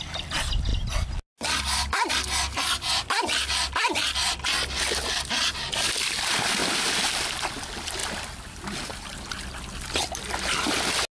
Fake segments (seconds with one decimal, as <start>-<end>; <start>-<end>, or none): none